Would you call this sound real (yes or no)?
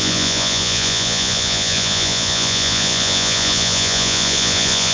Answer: no